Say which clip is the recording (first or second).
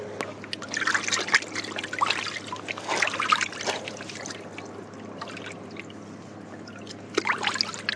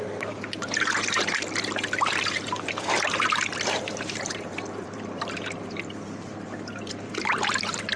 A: first